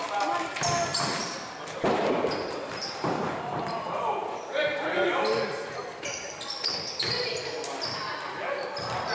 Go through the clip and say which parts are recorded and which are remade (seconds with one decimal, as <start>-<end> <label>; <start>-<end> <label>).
0.0-0.9 recorded; 0.9-2.9 remade; 2.9-4.2 recorded; 4.2-6.7 remade; 6.7-9.1 recorded